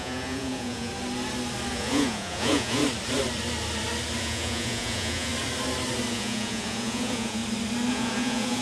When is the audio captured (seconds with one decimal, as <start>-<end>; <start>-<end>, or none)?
0.9-1.7; 2.8-4.2; 5.3-6.1; 7.4-7.9